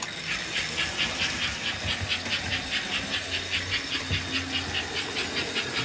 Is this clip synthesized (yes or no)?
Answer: no